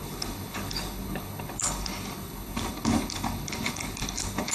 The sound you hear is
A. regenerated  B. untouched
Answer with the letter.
A